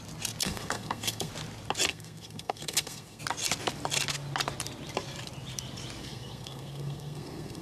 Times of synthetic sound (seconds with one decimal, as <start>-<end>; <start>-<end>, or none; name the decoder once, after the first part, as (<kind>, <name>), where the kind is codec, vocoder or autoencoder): 0.4-1.3 (codec, SNAC); 1.9-3.2; 6.0-7.6